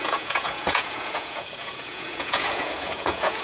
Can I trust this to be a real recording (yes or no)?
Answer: no